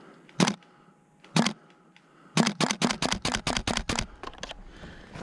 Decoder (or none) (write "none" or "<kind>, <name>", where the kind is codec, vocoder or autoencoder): none